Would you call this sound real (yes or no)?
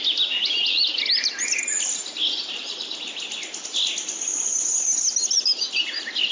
yes